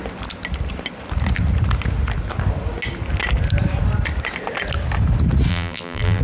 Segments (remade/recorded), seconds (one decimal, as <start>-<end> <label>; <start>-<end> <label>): 0.0-5.5 recorded; 5.5-6.2 remade